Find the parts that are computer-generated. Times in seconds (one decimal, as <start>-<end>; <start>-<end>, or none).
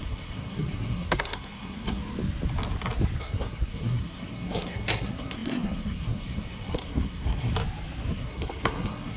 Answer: 0.0-2.0; 3.2-7.5; 8.1-9.2